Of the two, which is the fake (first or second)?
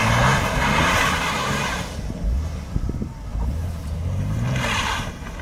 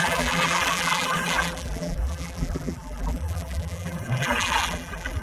second